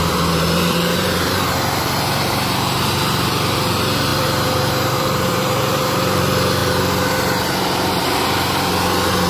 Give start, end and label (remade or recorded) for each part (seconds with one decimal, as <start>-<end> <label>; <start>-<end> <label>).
0.0-9.3 remade